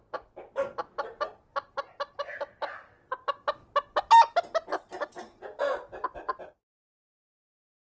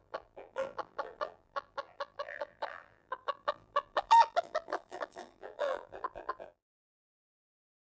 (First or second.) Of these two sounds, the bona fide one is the first